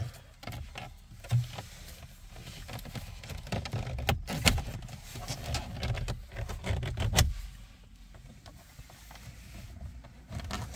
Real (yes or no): yes